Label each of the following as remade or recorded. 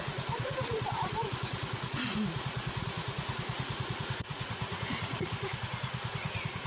remade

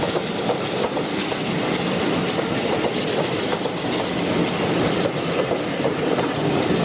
remade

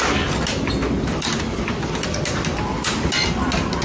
recorded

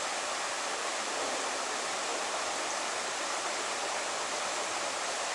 recorded